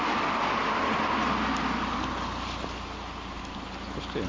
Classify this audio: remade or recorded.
recorded